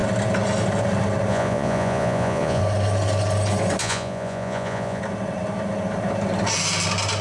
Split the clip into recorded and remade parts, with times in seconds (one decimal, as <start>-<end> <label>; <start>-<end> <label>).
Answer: 0.0-1.3 recorded; 1.3-2.6 remade; 2.6-3.8 recorded; 3.8-5.0 remade; 5.0-7.2 recorded